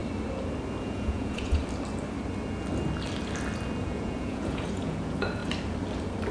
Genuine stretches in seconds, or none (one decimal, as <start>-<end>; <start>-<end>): 0.0-0.8; 1.6-3.8; 5.4-6.3